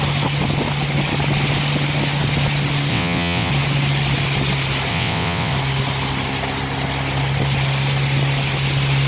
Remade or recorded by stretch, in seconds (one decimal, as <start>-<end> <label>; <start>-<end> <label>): 0.0-2.9 recorded; 2.9-3.5 remade; 3.5-4.9 recorded; 4.9-5.5 remade; 5.5-9.1 recorded